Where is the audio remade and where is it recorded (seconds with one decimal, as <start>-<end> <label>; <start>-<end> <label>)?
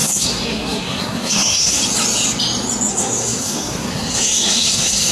0.0-1.8 remade; 1.8-2.9 recorded; 2.9-5.1 remade